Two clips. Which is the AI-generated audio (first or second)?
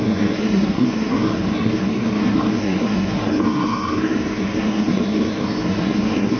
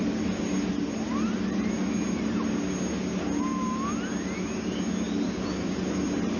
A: first